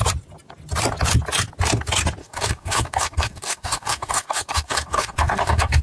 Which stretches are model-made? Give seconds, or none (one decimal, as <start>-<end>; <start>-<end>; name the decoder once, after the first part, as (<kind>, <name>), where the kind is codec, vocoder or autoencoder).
2.2-5.8 (codec, DAC)